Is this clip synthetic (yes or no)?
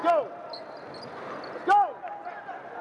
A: no